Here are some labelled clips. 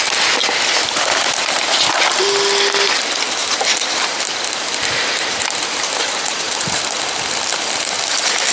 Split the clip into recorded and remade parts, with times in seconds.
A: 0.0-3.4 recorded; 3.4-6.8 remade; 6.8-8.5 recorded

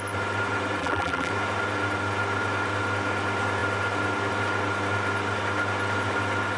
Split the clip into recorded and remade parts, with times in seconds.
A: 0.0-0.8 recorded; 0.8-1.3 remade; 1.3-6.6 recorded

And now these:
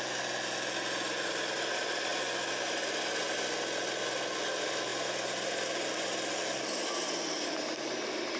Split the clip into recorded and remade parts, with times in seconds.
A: 0.0-8.4 recorded

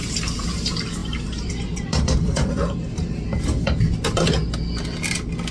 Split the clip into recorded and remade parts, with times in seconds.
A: 0.0-3.3 remade; 3.3-5.5 recorded

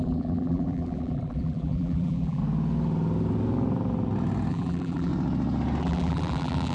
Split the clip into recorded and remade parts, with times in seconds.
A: 0.0-2.4 remade; 2.4-4.5 recorded; 4.5-5.1 remade; 5.1-5.8 recorded; 5.8-6.7 remade